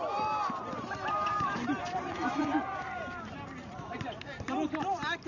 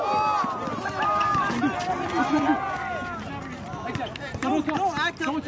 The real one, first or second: second